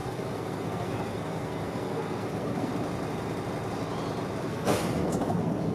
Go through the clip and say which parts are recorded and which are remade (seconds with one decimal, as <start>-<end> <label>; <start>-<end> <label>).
0.0-2.7 remade; 2.7-4.4 recorded; 4.4-5.7 remade